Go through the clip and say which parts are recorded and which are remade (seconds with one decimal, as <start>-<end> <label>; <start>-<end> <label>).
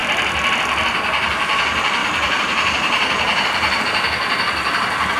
0.0-2.0 recorded; 2.0-3.8 remade; 3.8-5.2 recorded